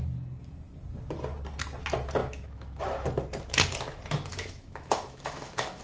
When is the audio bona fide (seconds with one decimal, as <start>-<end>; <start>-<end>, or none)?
0.0-2.2; 2.8-4.3